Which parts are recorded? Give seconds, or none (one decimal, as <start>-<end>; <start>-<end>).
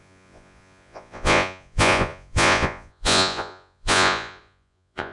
none